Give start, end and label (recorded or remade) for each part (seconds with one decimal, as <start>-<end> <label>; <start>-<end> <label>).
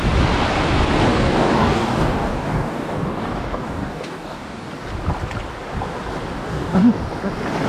0.0-1.1 recorded; 1.1-4.7 remade; 4.7-6.4 recorded; 6.4-7.0 remade; 7.0-7.7 recorded